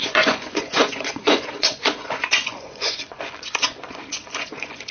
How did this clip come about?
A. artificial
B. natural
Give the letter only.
A